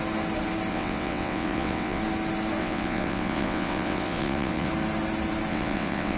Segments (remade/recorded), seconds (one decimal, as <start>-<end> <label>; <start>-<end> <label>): 0.0-0.7 recorded; 0.7-2.0 remade; 2.0-2.6 recorded; 2.6-4.7 remade; 4.7-5.5 recorded; 5.5-6.2 remade

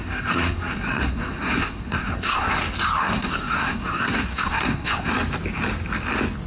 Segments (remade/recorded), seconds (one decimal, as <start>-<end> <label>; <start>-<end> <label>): 0.0-2.5 remade; 2.5-3.0 recorded; 3.0-5.1 remade; 5.1-6.5 recorded

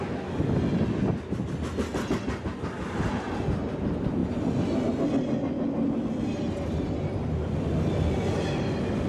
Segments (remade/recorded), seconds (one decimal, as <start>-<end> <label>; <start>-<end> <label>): 0.0-9.1 recorded

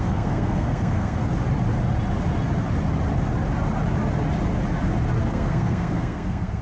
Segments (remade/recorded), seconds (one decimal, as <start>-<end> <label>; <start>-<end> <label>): 0.0-1.2 remade; 1.2-5.2 recorded; 5.2-6.6 remade

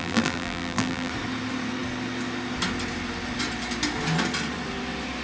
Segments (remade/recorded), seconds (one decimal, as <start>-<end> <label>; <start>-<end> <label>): 0.0-1.1 remade; 1.1-5.2 recorded

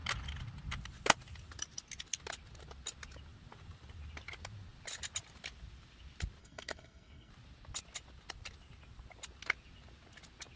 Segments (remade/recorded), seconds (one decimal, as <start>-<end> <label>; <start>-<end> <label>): 0.0-6.4 recorded; 6.4-7.3 remade; 7.3-10.6 recorded

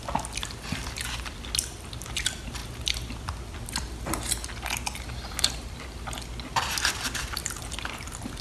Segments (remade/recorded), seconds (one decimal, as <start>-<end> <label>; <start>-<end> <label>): 0.0-8.4 recorded

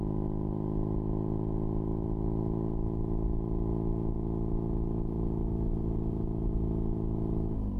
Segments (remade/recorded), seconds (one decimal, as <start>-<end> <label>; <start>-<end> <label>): 0.0-7.8 recorded